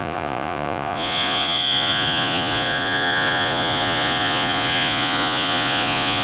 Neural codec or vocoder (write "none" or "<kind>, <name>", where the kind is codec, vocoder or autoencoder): vocoder, Vocos